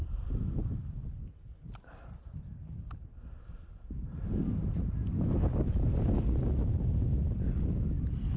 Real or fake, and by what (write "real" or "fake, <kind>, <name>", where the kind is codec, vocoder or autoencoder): real